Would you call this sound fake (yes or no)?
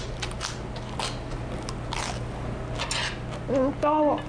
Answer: no